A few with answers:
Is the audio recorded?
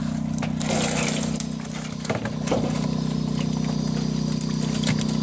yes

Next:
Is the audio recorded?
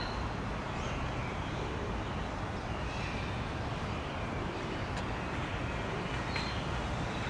yes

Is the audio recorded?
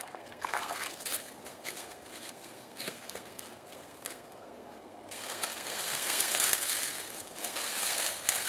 no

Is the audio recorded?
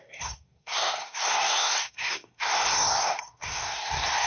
no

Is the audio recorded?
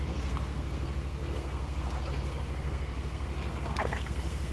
no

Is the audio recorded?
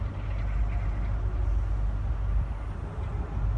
yes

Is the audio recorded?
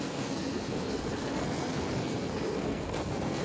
no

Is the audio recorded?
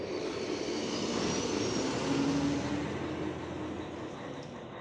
yes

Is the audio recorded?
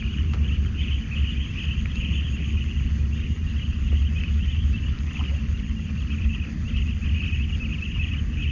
yes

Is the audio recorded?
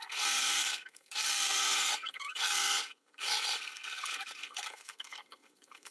no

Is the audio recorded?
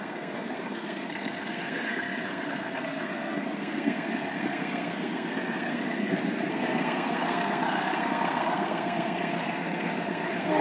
no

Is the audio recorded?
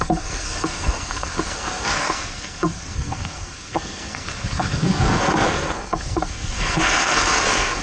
no